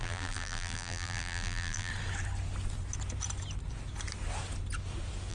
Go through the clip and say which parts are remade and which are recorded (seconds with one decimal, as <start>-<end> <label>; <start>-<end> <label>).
0.0-1.9 remade; 1.9-5.3 recorded